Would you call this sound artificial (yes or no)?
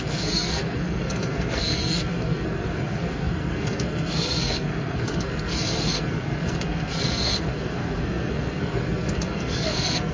yes